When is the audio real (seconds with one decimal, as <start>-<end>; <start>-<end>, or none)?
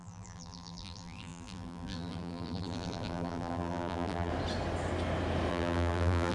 4.3-5.5